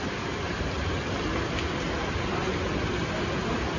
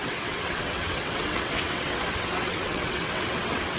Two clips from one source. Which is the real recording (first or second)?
first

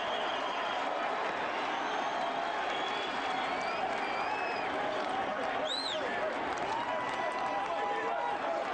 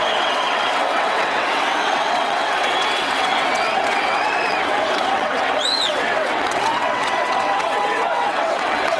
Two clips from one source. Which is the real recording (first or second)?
first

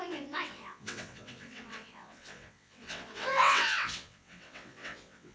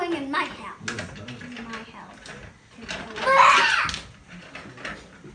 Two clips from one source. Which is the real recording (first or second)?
second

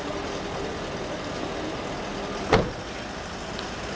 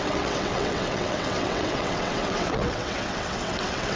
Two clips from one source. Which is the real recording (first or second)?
first